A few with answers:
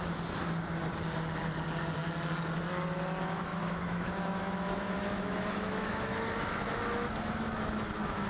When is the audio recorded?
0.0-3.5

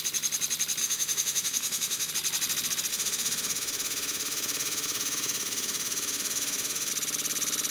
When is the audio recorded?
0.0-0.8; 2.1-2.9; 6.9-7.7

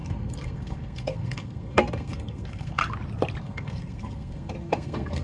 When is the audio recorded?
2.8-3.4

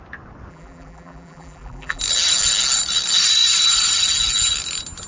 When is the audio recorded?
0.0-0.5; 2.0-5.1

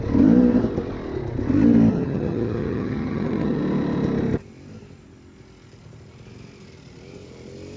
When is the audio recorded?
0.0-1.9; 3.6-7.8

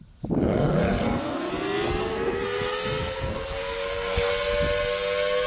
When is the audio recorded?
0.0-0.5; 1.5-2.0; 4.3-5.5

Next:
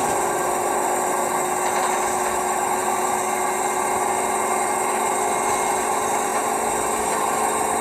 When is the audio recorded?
0.0-7.8

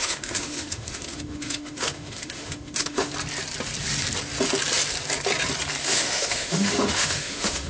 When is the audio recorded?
3.1-5.8